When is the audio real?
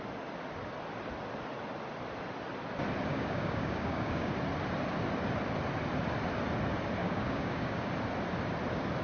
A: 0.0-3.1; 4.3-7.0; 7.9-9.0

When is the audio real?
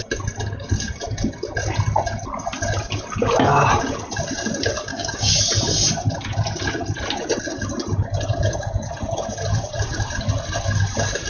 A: 0.0-4.9; 5.4-11.3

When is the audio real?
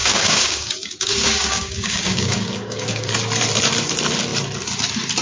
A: 3.1-5.2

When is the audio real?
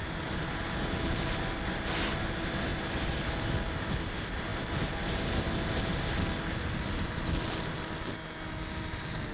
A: 0.0-9.3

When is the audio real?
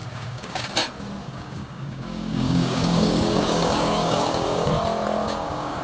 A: 0.7-1.2; 4.7-5.2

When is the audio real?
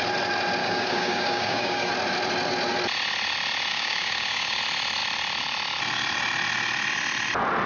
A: 0.0-0.6; 1.9-3.7; 4.6-7.7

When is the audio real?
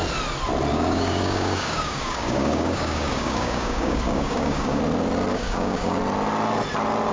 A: 0.0-0.7; 4.8-5.3; 6.0-7.1